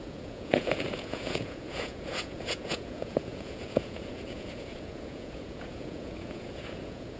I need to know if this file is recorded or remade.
remade